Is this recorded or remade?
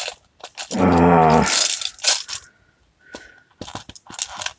recorded